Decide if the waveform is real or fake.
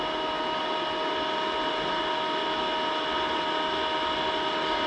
real